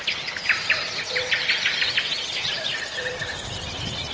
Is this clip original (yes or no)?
yes